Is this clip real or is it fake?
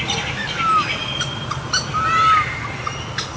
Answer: real